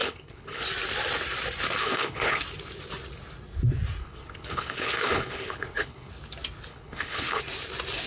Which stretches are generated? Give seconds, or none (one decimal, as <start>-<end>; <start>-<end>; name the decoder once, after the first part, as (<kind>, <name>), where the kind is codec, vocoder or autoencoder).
0.0-0.6 (codec, HILCodec); 1.8-2.4; 4.0-6.1; 6.7-7.4